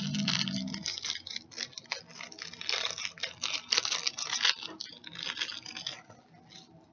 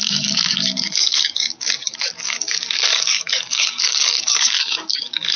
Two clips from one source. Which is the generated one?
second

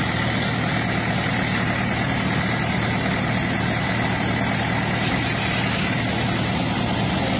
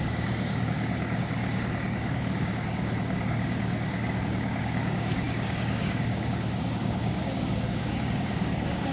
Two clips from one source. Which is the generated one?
second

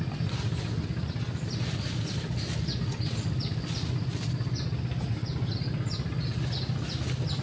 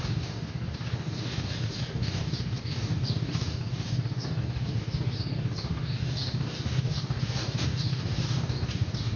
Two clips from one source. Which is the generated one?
second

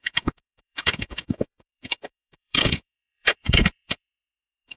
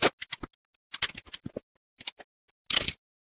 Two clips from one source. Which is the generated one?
first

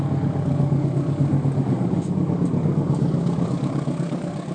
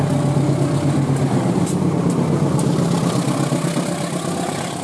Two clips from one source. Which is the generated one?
first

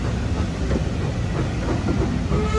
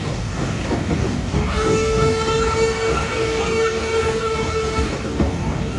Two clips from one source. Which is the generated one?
second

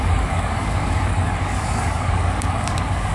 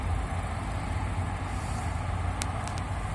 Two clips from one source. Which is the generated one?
first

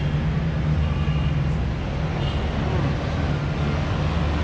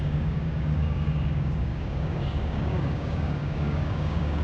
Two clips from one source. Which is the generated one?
second